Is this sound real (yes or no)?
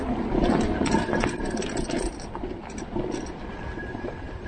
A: yes